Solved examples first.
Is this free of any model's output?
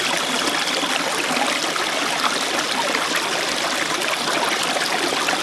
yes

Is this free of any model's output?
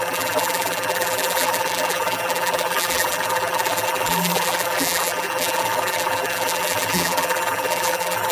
no